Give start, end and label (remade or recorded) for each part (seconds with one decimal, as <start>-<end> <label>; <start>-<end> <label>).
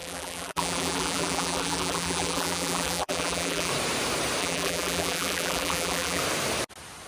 0.0-3.7 remade; 3.7-4.4 recorded; 4.4-6.2 remade; 6.2-7.1 recorded